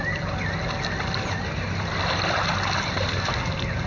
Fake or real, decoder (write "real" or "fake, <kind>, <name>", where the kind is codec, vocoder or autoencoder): real